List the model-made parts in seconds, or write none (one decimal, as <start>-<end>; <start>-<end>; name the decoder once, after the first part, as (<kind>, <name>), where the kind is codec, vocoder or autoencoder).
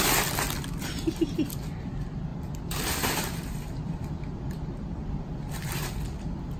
0.0-6.6 (vocoder, BigVGAN v2)